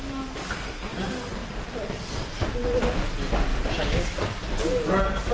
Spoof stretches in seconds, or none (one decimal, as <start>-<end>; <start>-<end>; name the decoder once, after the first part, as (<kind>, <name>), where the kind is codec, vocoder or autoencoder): 1.4-2.3 (vocoder, BigVGAN v2)